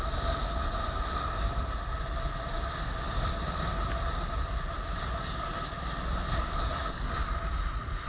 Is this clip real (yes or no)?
yes